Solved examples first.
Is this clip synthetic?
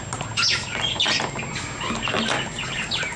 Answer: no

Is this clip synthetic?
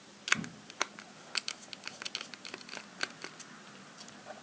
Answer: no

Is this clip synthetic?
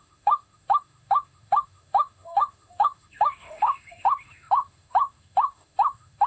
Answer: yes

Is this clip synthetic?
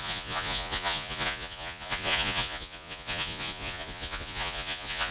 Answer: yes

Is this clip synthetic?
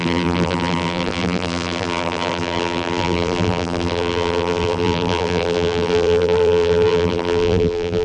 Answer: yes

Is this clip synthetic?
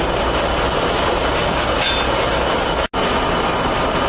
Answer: no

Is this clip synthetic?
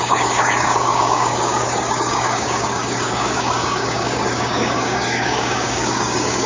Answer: yes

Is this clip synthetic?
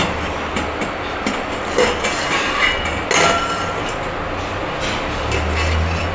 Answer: no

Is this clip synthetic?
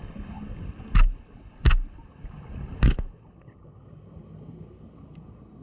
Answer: no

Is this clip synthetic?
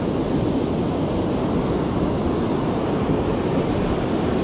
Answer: no